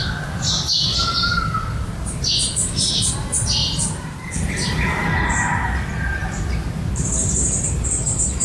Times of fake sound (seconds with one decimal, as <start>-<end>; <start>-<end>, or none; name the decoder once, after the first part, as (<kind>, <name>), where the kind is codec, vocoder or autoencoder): 0.0-3.1 (vocoder, BigVGAN v2); 3.6-4.3; 6.2-6.9

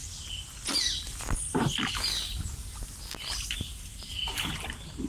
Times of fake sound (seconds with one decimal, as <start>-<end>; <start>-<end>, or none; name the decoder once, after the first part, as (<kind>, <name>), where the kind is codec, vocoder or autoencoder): none

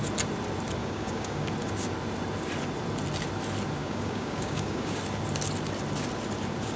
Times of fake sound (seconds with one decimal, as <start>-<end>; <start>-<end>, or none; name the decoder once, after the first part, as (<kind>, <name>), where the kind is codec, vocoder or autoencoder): 0.8-1.5 (codec, DAC); 3.8-5.0